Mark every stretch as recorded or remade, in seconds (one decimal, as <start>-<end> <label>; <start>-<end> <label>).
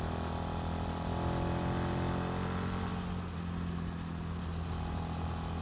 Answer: 0.0-5.6 recorded